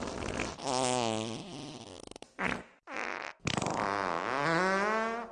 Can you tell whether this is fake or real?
real